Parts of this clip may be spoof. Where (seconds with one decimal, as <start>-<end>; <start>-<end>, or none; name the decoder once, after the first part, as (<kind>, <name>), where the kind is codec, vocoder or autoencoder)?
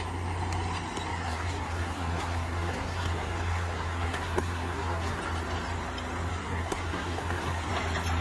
1.1-5.2 (codec, SNAC); 6.3-7.7